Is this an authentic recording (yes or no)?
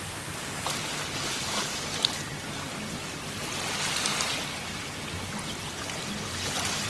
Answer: yes